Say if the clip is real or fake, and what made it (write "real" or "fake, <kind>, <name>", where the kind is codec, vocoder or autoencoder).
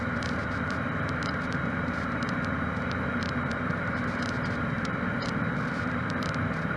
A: fake, vocoder, BigVGAN v2